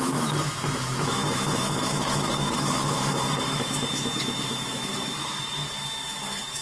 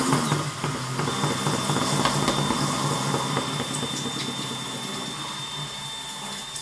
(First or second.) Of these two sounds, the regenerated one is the first